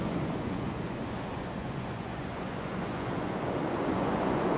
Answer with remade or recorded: remade